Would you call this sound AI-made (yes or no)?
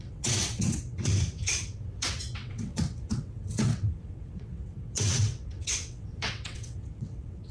yes